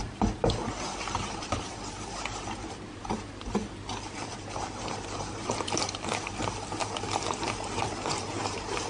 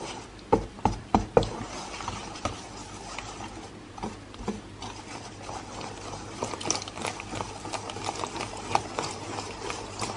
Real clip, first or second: second